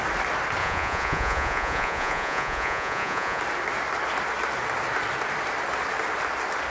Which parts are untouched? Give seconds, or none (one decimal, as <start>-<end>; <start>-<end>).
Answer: 0.0-0.6; 3.4-6.7